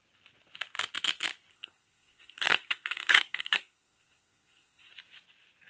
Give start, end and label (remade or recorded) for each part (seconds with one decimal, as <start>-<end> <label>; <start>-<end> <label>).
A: 0.0-1.5 recorded; 1.5-4.9 remade; 4.9-5.7 recorded

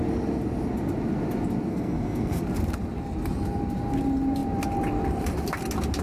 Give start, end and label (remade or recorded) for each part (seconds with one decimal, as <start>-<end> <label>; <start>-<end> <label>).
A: 0.0-1.7 recorded; 1.7-2.4 remade; 2.4-6.0 recorded

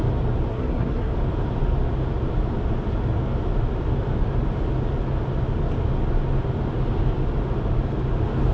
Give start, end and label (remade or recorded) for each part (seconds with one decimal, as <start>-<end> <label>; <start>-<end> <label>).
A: 0.0-0.5 recorded; 0.5-1.1 remade; 1.1-8.5 recorded

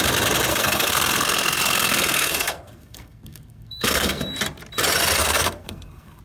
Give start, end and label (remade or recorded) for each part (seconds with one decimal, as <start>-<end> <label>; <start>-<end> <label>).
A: 0.0-0.5 recorded; 0.5-4.2 remade; 4.2-5.2 recorded; 5.2-6.2 remade

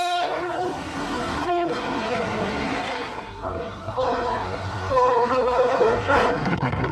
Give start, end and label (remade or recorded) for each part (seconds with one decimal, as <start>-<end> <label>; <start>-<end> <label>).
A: 0.0-6.9 remade

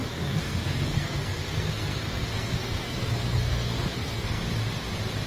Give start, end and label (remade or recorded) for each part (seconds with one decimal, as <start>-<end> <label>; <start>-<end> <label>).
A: 0.0-4.4 remade; 4.4-5.3 recorded

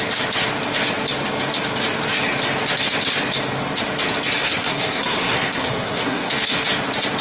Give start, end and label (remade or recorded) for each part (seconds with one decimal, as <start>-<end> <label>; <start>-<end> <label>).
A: 0.0-4.4 recorded; 4.4-6.3 remade; 6.3-7.2 recorded

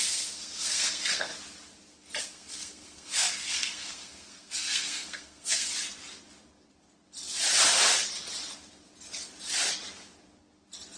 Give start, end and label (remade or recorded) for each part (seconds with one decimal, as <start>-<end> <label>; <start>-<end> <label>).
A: 0.0-1.3 remade; 1.3-2.2 recorded; 2.2-5.7 remade; 5.7-11.0 recorded